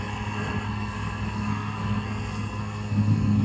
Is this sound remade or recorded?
remade